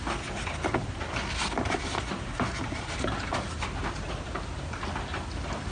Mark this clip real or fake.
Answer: real